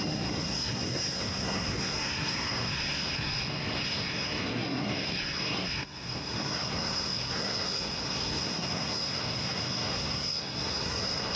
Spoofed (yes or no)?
yes